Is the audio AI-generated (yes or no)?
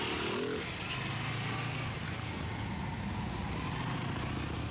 no